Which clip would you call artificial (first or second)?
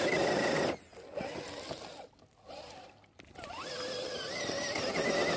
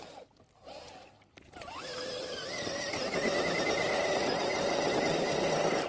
second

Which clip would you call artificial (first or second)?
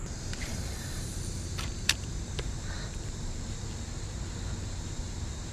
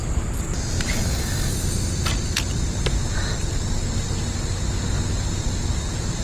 first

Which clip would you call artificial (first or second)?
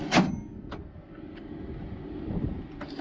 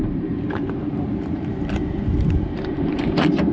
second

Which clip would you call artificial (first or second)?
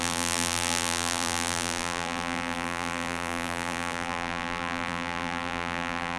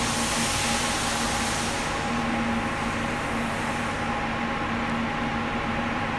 first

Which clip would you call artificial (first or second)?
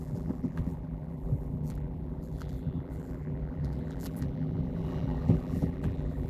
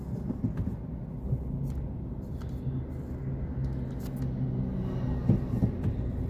first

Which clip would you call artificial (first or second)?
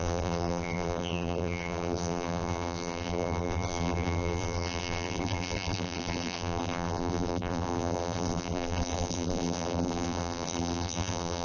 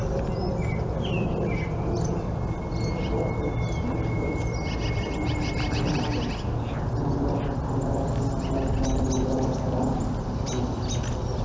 first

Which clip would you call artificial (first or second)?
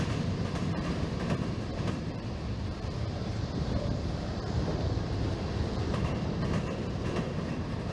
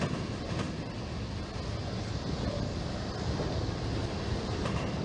first